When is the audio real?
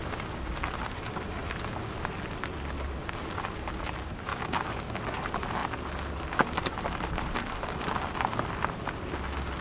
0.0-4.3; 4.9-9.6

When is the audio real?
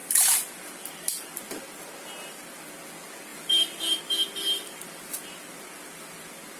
0.8-3.3; 4.0-6.6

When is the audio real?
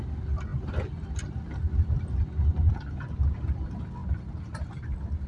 0.0-5.3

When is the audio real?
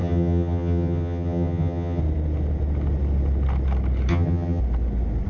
2.0-4.1; 4.6-5.3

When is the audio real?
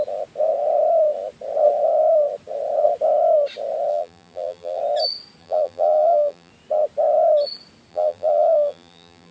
0.0-3.9; 4.8-5.4; 6.5-7.9